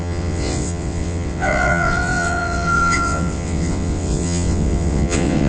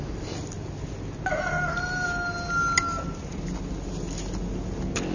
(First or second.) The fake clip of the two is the first